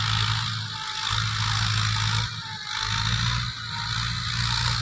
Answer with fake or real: real